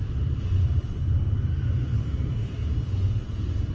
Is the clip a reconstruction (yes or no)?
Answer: no